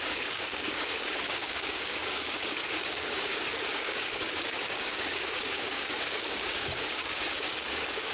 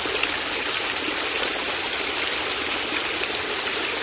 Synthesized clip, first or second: first